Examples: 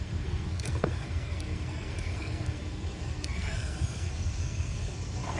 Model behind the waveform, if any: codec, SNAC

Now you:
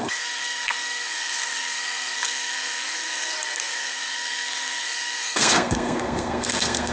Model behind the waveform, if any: codec, SNAC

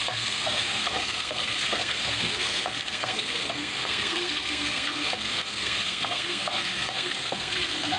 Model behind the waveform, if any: codec, SNAC